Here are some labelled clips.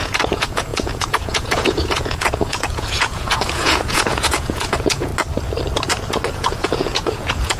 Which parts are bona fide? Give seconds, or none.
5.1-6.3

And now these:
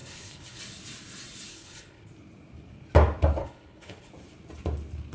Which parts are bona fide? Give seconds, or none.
0.6-1.5; 2.1-3.4; 4.1-5.1